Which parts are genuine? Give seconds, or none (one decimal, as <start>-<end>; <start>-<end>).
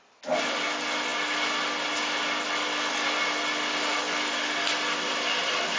0.0-5.8